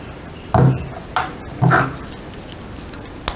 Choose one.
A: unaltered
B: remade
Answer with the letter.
A